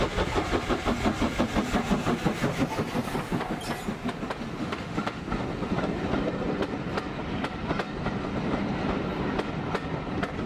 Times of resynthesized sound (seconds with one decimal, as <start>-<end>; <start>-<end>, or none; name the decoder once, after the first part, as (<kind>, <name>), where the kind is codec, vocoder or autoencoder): 4.6-5.2 (autoencoder, DAC-VAE)